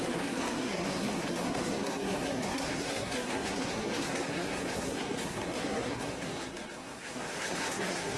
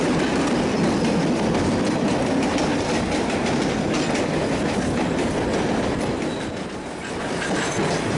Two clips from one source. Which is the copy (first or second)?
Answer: first